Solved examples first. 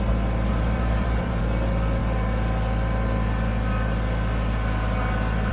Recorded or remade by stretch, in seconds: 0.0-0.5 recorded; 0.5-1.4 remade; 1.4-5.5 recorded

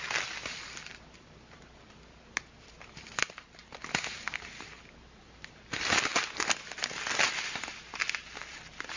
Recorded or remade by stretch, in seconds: 0.0-9.0 recorded

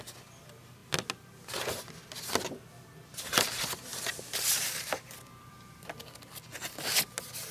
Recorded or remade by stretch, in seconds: 0.0-7.5 recorded

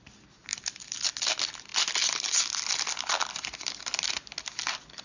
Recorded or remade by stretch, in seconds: 0.0-5.0 recorded

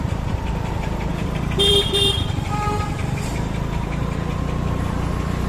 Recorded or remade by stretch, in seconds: 0.0-1.1 recorded; 1.1-4.4 remade; 4.4-5.5 recorded

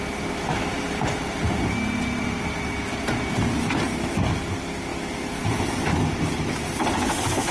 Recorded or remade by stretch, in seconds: 0.0-0.7 recorded; 0.7-1.6 remade; 1.6-7.5 recorded

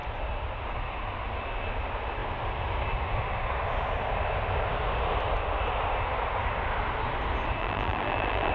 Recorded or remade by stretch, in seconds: 0.0-7.6 recorded; 7.6-8.5 remade

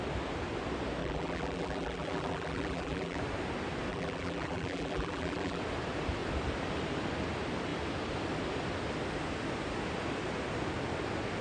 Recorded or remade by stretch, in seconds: 0.0-1.0 recorded; 1.0-3.2 remade; 3.2-3.9 recorded; 3.9-5.6 remade; 5.6-11.4 recorded